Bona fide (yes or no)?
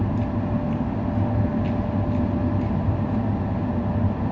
yes